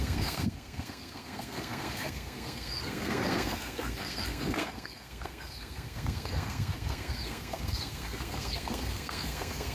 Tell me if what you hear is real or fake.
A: fake